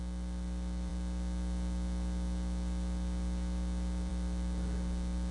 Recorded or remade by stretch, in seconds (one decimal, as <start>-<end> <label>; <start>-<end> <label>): 0.0-5.3 recorded

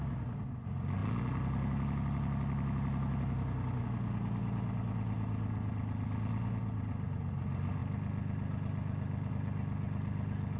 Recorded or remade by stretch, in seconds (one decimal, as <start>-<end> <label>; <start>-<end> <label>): 0.0-10.6 recorded

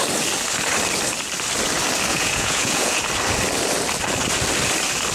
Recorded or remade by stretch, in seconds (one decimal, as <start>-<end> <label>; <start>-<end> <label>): 0.0-2.1 recorded; 2.1-3.0 remade; 3.0-5.1 recorded

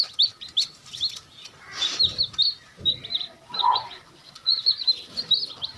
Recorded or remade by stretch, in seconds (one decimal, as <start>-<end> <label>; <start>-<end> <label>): 0.0-3.6 recorded; 3.6-4.8 remade; 4.8-5.8 recorded

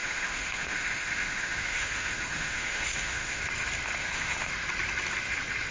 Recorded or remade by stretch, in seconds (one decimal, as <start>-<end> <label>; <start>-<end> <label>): 0.0-3.4 remade; 3.4-4.0 recorded; 4.0-4.5 remade; 4.5-5.7 recorded